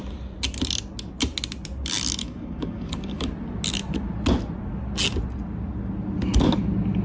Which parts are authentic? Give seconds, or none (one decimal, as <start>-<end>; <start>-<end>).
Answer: 0.0-2.2; 3.3-7.0